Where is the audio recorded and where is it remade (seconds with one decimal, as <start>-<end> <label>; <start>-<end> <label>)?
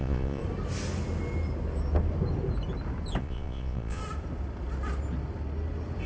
0.0-0.4 remade; 0.4-3.2 recorded; 3.2-4.0 remade; 4.0-6.1 recorded